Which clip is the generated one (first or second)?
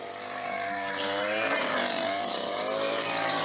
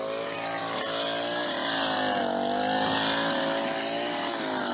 first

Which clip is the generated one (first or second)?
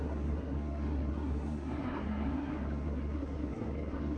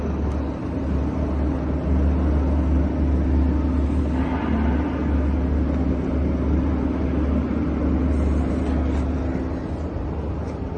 first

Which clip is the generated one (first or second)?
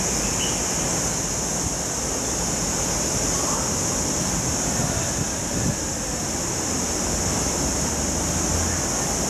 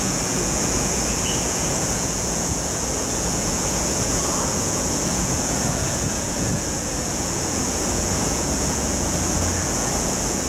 second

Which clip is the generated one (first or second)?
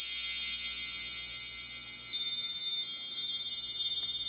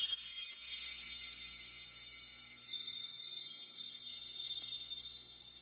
second